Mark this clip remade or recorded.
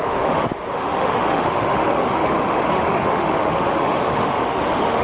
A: remade